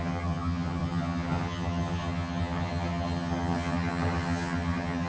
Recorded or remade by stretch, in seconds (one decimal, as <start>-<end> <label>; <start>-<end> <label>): 0.0-5.1 remade